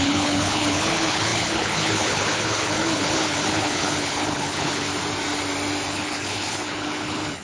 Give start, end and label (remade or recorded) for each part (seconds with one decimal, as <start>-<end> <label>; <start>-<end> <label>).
0.0-4.9 remade; 4.9-5.9 recorded; 5.9-7.4 remade